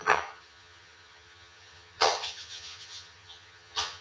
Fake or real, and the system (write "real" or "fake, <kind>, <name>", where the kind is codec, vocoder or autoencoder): fake, vocoder, HiFi-GAN